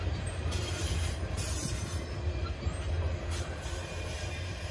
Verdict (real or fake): fake